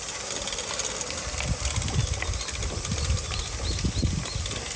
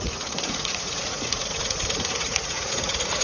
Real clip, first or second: first